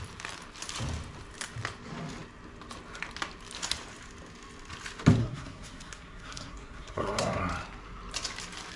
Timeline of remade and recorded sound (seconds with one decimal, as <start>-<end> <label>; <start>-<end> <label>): 0.0-5.2 recorded; 5.2-7.4 remade; 7.4-8.8 recorded